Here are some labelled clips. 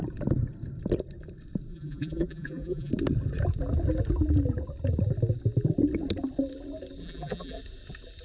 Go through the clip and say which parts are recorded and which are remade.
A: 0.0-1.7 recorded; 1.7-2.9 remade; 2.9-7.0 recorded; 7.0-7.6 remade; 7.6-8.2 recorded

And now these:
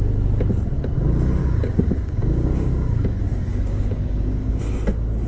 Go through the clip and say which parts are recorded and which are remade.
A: 0.0-1.4 recorded; 1.4-4.6 remade; 4.6-5.3 recorded